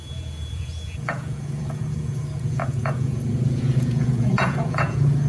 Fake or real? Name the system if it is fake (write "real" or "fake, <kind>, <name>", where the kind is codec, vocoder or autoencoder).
fake, vocoder, Vocos